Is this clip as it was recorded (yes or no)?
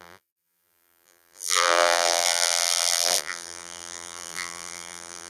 no